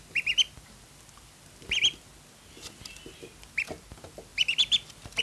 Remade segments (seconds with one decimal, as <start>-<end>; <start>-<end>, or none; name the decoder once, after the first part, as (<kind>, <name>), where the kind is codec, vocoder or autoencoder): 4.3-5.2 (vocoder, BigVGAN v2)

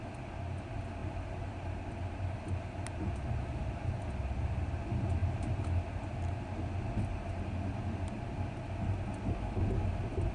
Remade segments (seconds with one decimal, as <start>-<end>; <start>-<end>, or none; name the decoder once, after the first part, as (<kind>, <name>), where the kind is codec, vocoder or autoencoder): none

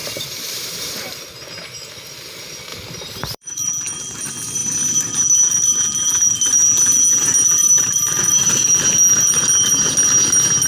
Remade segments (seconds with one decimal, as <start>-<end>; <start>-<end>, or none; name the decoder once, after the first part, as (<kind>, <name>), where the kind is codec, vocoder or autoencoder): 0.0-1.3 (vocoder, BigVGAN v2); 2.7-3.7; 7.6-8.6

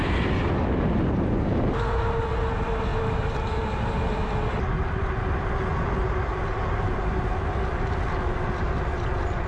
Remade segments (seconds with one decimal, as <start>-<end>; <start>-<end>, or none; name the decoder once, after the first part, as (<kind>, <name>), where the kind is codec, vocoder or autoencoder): none